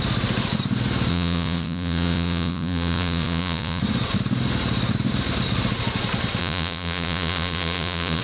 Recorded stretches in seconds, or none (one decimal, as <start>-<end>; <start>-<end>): 0.0-1.1; 3.8-6.4